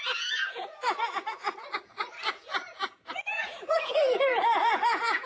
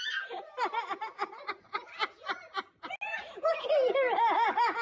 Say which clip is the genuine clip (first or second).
second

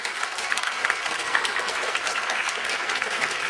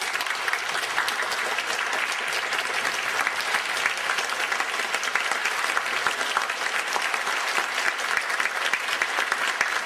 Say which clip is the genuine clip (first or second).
second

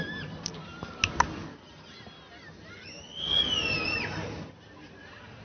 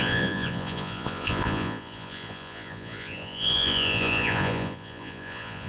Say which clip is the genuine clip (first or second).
first